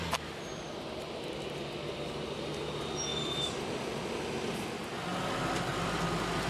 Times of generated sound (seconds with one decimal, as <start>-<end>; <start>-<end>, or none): 3.1-3.8